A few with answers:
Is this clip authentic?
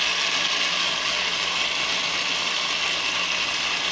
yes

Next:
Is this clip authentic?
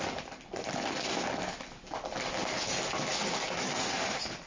yes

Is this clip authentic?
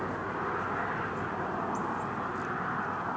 yes